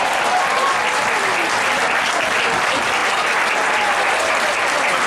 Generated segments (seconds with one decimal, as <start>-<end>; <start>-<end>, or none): none